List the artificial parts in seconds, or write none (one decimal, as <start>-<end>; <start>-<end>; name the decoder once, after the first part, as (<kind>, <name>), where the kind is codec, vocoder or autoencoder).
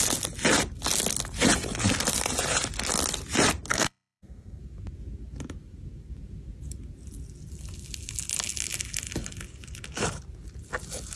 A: 3.7-4.6 (codec, SNAC)